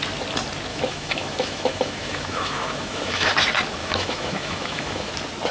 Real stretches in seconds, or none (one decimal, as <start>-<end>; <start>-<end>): 0.0-0.7; 3.3-3.8; 5.1-5.5

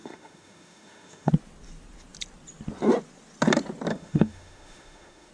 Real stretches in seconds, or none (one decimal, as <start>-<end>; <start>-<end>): 1.3-3.9